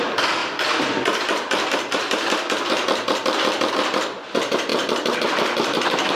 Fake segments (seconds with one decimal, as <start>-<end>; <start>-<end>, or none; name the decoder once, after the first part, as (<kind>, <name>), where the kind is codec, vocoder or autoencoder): 0.4-3.7 (vocoder, BigVGAN v2); 4.7-6.1